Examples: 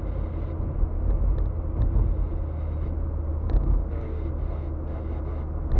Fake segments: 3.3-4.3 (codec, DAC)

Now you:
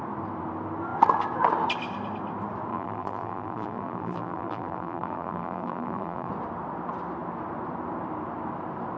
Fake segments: 2.7-6.3 (vocoder, BigVGAN v2)